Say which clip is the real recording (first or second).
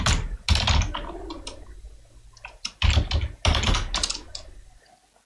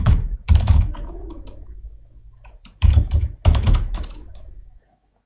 first